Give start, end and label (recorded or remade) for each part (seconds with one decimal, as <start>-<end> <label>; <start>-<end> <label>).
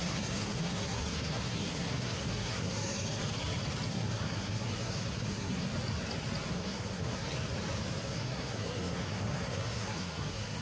0.0-3.2 remade; 3.2-3.9 recorded; 3.9-5.7 remade; 5.7-6.5 recorded; 6.5-7.3 remade; 7.3-8.0 recorded; 8.0-10.6 remade